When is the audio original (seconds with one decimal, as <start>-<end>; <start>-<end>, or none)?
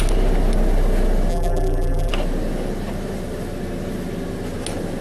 0.0-1.3; 2.1-5.0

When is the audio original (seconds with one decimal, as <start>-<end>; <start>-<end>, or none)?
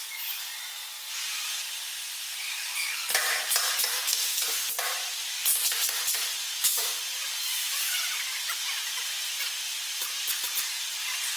0.0-3.9; 4.4-11.4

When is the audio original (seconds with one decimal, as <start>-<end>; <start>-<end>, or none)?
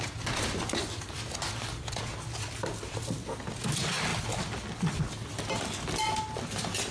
0.0-6.9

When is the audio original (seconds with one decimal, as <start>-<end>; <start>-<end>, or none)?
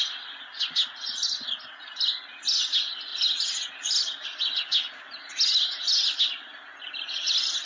0.0-7.7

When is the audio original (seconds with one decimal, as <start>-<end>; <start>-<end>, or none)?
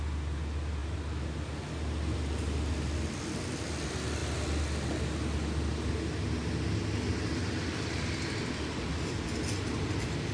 0.0-10.3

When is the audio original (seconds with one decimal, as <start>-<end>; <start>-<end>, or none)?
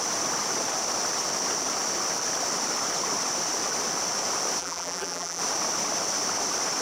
0.0-4.6; 5.4-6.8